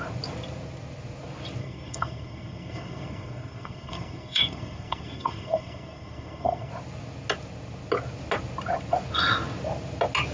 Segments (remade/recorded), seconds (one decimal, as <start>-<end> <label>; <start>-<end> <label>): 0.0-1.6 recorded; 1.6-6.7 remade; 6.7-10.3 recorded